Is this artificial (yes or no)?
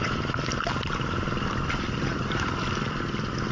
no